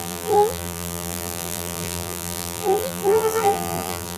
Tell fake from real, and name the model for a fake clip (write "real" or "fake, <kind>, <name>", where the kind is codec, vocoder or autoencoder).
fake, vocoder, BigVGAN v2